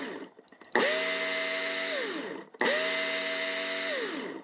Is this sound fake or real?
real